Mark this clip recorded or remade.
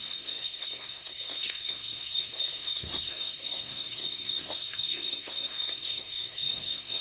remade